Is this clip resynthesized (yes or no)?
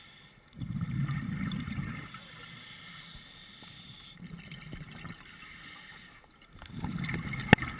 no